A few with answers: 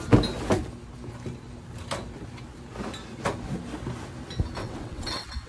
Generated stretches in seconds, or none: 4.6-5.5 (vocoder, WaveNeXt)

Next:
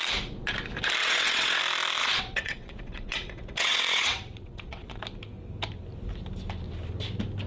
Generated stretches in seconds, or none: 1.0-1.6 (vocoder, WaveNeXt); 2.0-5.0

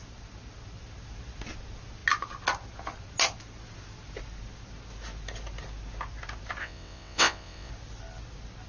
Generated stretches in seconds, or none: 6.6-7.7 (vocoder, WaveNeXt)

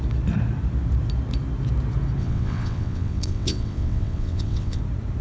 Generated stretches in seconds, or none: 2.2-4.8 (vocoder, WaveNeXt)

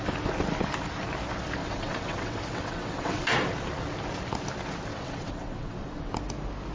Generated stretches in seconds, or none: 1.6-3.2 (vocoder, WaveNeXt); 4.9-6.1

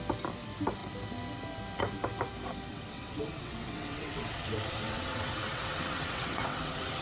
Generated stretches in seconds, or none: 2.7-7.0 (vocoder, WaveNeXt)